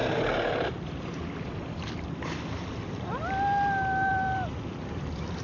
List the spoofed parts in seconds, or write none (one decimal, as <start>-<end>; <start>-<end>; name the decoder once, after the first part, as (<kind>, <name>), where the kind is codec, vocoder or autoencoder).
0.0-3.1 (vocoder, BigVGAN v2); 4.1-5.4